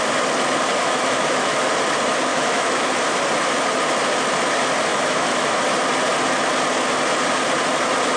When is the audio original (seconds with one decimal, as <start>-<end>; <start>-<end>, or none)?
0.0-0.8; 1.6-2.3; 2.9-4.9; 5.6-8.2